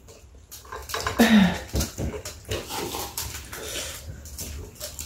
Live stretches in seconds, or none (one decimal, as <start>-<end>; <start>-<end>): 0.0-5.1